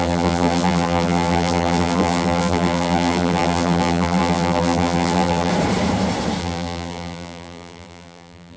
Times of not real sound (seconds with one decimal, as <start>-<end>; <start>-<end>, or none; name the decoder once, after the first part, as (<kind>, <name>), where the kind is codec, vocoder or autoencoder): 0.0-5.5 (vocoder, BigVGAN v2); 6.4-8.6